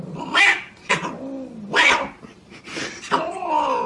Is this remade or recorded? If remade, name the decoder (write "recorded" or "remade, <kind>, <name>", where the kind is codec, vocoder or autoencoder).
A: recorded